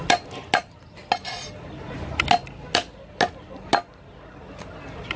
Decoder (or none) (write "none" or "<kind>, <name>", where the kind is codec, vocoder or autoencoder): none